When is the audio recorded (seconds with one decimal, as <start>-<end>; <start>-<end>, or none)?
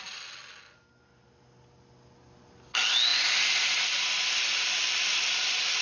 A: 0.0-3.1; 4.0-5.8